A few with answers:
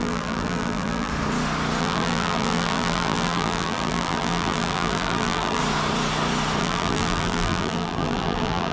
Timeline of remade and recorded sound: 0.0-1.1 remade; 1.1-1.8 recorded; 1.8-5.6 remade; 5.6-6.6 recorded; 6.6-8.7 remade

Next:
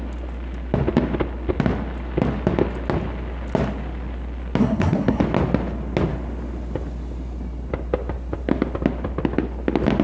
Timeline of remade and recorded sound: 0.0-4.6 recorded; 4.6-5.2 remade; 5.2-10.0 recorded

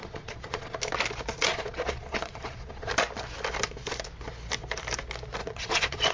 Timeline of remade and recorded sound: 0.0-0.8 remade; 0.8-1.5 recorded; 1.5-2.9 remade; 2.9-5.4 recorded; 5.4-6.1 remade